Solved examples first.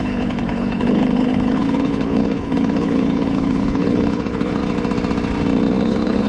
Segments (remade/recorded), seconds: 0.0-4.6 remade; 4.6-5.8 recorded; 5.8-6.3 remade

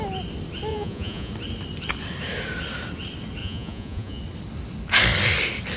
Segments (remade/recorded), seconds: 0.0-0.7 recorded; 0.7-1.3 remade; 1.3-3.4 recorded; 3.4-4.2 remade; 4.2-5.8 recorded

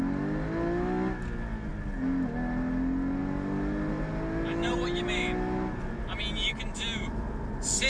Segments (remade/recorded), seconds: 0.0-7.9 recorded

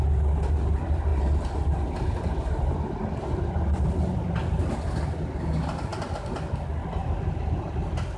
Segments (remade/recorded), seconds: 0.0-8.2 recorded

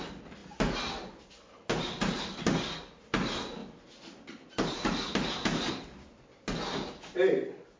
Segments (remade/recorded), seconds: 0.0-7.8 recorded

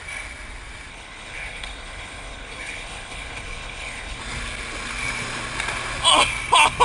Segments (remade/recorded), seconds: 0.0-0.9 recorded; 0.9-4.2 remade; 4.2-6.8 recorded

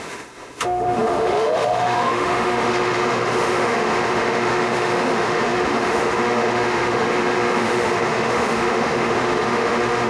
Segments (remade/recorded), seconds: 0.0-10.1 remade